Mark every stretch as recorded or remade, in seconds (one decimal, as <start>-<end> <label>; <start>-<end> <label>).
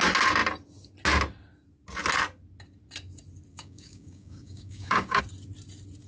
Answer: 0.0-3.5 recorded; 3.5-5.2 remade; 5.2-6.1 recorded